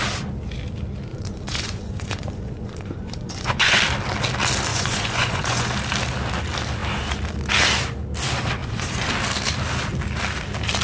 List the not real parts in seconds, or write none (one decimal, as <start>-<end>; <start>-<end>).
1.1-3.8; 4.7-5.7; 8.6-9.1